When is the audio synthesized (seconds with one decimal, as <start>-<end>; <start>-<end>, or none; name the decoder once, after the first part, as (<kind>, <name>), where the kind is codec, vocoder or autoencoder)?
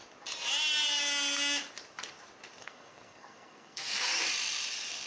2.6-4.1 (codec, SNAC)